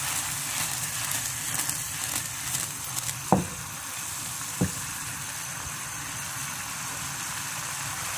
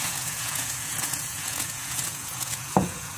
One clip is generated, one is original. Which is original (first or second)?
first